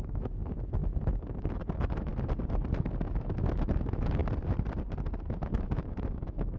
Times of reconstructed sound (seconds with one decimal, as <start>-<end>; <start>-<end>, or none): 0.0-2.1; 3.0-4.2; 5.3-6.6